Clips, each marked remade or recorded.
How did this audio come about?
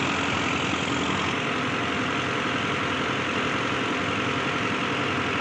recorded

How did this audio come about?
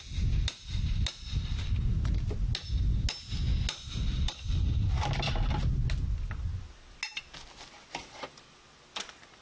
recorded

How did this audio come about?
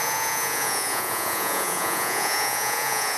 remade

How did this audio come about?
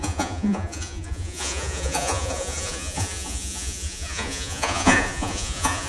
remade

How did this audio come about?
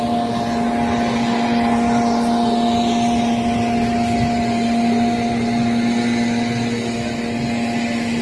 recorded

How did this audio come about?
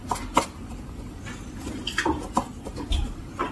recorded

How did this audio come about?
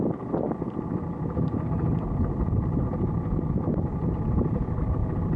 recorded